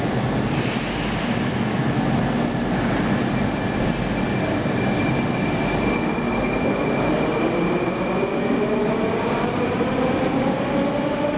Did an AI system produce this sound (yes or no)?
no